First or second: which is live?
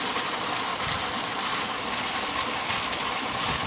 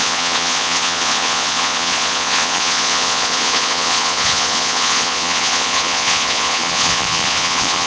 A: first